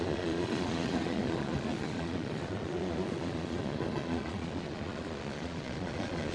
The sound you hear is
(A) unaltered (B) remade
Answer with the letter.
B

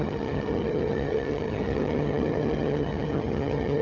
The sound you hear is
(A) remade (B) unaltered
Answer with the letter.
A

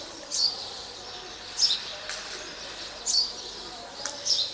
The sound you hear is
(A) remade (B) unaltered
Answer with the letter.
A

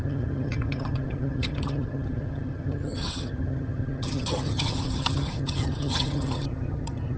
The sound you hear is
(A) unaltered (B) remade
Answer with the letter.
B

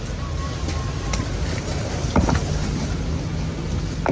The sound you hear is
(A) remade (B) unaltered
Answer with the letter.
B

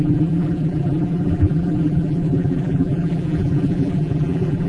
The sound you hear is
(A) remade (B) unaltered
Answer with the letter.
A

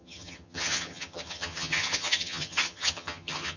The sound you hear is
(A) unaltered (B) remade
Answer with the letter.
B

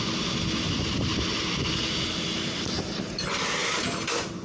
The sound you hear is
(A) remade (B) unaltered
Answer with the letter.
B